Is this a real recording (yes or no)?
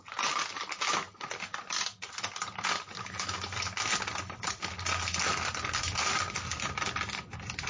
yes